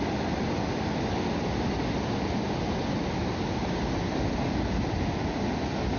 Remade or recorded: recorded